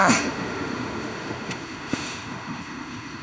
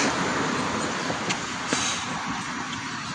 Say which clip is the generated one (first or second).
first